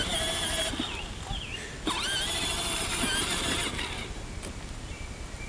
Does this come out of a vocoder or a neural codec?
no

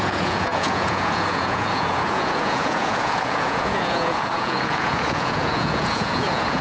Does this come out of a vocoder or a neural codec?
yes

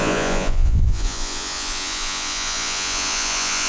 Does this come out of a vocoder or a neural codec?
yes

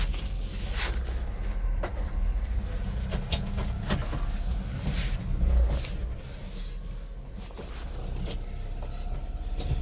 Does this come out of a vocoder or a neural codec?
no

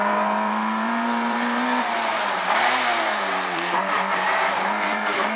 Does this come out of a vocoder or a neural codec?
yes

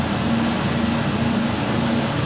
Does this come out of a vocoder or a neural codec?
no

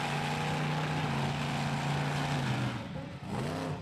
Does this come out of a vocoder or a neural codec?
no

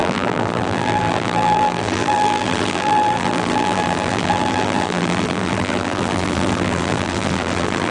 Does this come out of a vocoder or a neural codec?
yes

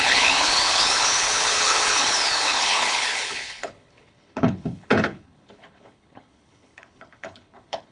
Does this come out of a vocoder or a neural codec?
yes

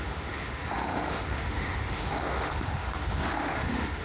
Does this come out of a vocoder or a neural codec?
yes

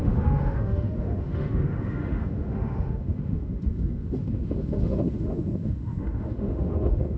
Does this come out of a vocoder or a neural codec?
yes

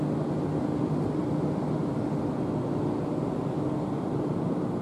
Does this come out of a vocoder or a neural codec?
no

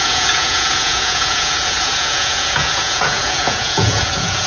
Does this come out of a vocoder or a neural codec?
yes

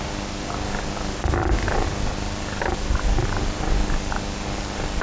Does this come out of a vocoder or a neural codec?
no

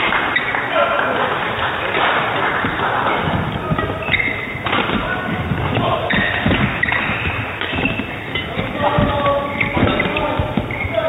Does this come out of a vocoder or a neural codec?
no